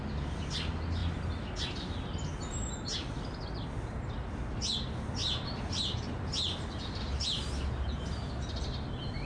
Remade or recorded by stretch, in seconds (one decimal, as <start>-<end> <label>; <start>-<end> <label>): 0.0-5.2 recorded; 5.2-8.3 remade; 8.3-9.3 recorded